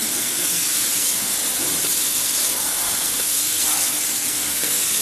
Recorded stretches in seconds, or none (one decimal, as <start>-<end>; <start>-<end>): 1.4-2.0

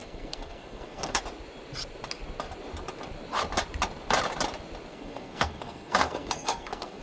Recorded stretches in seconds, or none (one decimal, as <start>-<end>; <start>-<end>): 1.2-4.9

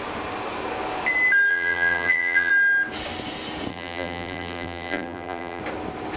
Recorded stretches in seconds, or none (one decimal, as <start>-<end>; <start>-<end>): 0.0-1.5; 2.5-3.7; 5.6-6.2

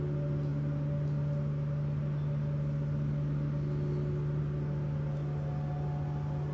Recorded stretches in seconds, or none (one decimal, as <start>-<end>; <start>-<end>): 0.0-6.5

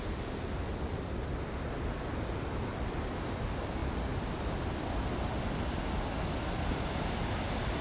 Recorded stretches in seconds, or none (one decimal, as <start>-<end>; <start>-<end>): 0.0-7.8

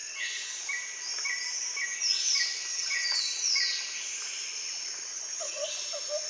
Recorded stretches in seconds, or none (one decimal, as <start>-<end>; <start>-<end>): 0.6-2.7; 3.2-5.1; 5.7-6.3